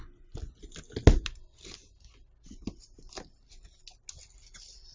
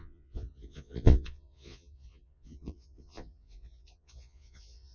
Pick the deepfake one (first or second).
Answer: second